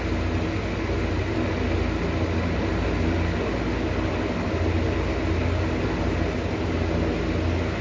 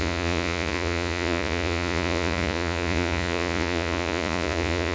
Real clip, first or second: first